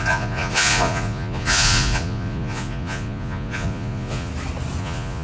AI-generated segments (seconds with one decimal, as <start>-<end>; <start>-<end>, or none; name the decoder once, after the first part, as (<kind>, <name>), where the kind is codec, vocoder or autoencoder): 0.0-4.3 (vocoder, Vocos); 4.8-5.2